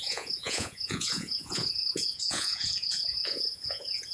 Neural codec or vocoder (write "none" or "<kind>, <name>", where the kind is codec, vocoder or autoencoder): vocoder, Vocos